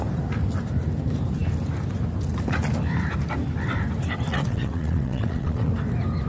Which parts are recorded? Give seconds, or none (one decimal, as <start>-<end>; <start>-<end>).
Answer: 0.0-4.3; 5.7-6.3

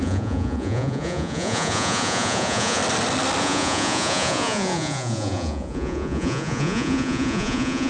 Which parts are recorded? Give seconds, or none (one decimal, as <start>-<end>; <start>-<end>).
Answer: 2.8-3.4